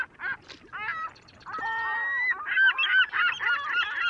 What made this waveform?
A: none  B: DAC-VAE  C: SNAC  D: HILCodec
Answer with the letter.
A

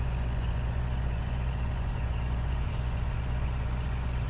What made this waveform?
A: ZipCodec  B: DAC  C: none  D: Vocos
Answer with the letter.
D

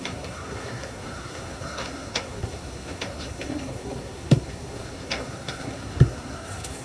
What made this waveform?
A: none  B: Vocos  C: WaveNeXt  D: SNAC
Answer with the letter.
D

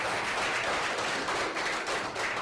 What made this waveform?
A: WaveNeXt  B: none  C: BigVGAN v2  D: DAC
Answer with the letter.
C